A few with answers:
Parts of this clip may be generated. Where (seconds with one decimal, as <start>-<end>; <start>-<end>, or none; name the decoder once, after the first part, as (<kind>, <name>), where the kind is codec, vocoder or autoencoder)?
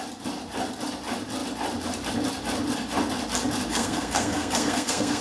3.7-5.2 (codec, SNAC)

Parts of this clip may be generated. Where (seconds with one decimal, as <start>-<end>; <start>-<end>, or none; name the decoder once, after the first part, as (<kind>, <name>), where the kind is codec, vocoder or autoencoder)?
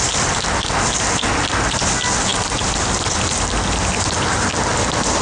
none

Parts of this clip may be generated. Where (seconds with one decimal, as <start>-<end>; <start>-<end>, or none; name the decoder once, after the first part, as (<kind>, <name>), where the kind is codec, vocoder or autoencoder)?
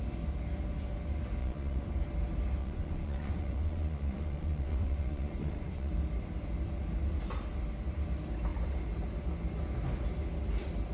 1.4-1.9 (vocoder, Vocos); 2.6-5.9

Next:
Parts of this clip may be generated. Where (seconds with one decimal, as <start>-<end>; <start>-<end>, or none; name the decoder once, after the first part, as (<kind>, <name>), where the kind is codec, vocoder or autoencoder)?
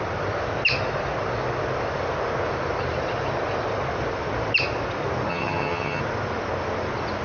5.3-6.0 (vocoder, HiFi-GAN)